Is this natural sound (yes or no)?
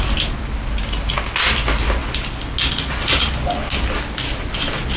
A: yes